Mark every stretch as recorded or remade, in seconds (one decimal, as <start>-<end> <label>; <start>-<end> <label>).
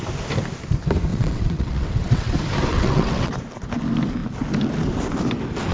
0.0-1.1 recorded; 1.1-2.3 remade; 2.3-2.7 recorded; 2.7-3.3 remade; 3.3-5.7 recorded